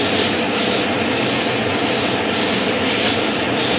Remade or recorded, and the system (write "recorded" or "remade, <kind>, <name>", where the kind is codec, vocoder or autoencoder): recorded